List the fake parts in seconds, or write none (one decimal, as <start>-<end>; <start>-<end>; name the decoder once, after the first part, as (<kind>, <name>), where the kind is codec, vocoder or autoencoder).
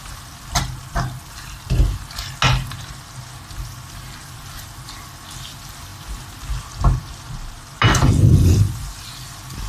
none